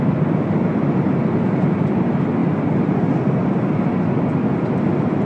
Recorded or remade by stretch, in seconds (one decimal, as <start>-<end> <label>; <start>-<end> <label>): 0.0-5.3 recorded